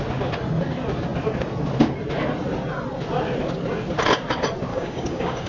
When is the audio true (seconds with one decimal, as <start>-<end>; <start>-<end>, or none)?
0.0-4.7